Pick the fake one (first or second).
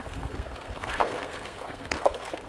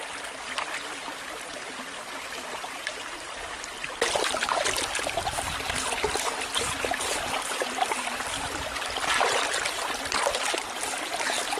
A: first